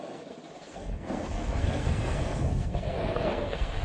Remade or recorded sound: remade